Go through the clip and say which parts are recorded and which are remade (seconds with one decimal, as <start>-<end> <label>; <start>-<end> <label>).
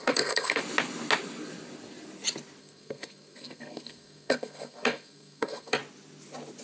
0.0-0.6 remade; 0.6-2.6 recorded; 2.6-5.8 remade; 5.8-6.6 recorded